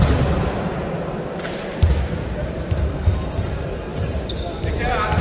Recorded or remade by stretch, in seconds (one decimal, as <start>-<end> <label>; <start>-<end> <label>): 0.0-5.2 recorded

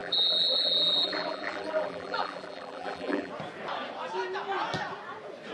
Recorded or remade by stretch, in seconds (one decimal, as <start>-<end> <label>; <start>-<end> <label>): 0.0-3.3 remade; 3.3-5.5 recorded

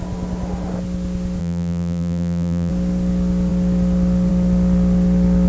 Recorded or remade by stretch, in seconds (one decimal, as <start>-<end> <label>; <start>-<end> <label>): 0.0-1.4 recorded; 1.4-2.7 remade; 2.7-5.5 recorded

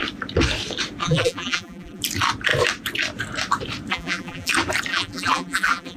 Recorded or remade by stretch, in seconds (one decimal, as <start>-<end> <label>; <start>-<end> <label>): 0.0-1.0 recorded; 1.0-2.0 remade; 2.0-3.9 recorded; 3.9-4.5 remade; 4.5-4.9 recorded; 4.9-6.0 remade

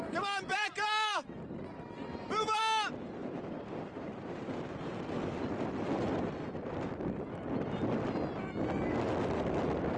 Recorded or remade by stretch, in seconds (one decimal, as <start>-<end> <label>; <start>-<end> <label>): 0.0-0.5 recorded; 0.5-2.6 remade; 2.6-3.2 recorded; 3.2-5.3 remade; 5.3-10.0 recorded

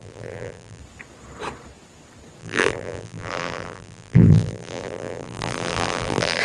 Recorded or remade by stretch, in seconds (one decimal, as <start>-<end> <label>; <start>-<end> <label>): 0.0-0.8 remade; 0.8-2.4 recorded; 2.4-6.4 remade

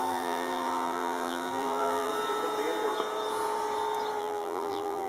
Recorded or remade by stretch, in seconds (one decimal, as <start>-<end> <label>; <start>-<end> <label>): 0.0-2.1 remade; 2.1-4.2 recorded; 4.2-5.1 remade